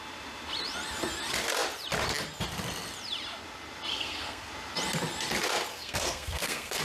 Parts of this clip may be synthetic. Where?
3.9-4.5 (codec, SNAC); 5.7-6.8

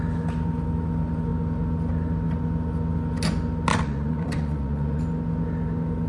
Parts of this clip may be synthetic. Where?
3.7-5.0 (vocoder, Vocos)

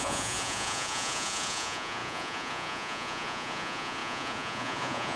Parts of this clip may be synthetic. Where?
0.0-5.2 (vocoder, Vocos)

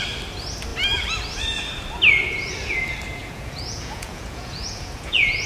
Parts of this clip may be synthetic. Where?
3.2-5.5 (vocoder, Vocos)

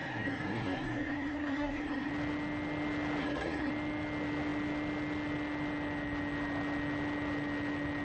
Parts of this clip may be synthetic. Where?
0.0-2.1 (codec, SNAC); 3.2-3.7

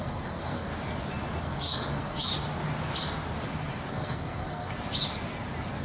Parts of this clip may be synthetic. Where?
0.0-0.7 (codec, SNAC); 1.4-2.3; 3.9-4.7

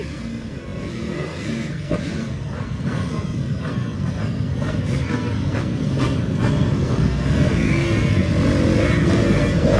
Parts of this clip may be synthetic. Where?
0.0-8.3 (codec, SNAC); 9.0-9.8